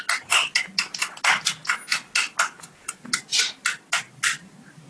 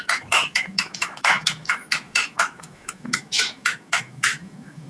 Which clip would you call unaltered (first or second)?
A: first